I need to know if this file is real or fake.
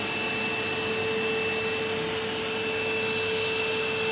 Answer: real